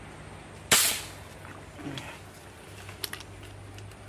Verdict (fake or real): real